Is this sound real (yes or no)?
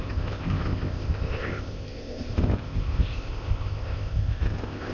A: no